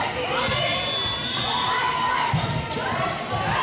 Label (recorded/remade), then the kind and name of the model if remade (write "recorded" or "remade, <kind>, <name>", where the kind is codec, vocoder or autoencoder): recorded